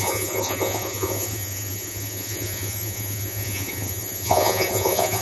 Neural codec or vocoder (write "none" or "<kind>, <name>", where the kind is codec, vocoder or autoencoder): vocoder, Vocos